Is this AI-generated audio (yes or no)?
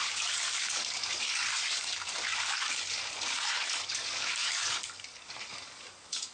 yes